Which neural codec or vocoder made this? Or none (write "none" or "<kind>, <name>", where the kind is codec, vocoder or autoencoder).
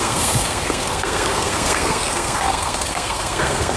codec, SNAC